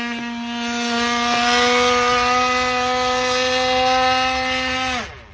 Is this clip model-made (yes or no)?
no